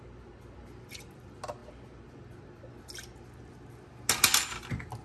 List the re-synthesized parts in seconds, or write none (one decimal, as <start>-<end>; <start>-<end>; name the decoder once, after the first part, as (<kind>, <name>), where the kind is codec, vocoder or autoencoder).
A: none